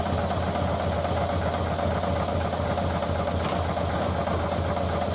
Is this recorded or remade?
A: recorded